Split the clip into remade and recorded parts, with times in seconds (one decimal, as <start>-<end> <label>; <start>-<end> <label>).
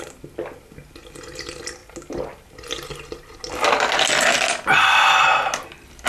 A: 0.0-6.1 recorded